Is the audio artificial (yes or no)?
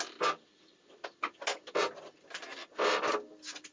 no